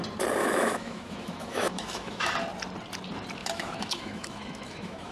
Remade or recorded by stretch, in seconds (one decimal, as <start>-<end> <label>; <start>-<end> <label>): 0.0-0.4 recorded; 0.4-2.3 remade; 2.3-3.4 recorded; 3.4-5.1 remade